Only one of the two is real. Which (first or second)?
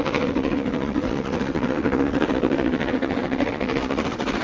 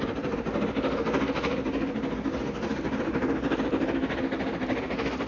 second